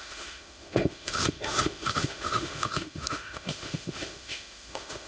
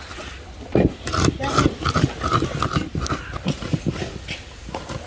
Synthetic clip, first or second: first